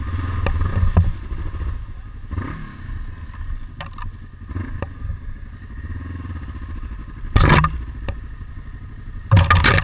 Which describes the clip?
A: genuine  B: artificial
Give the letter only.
A